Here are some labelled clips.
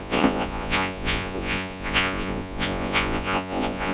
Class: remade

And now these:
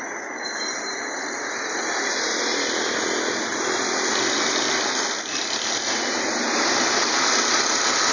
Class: recorded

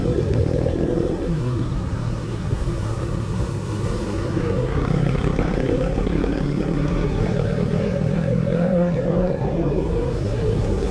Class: remade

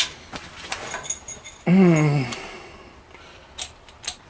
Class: recorded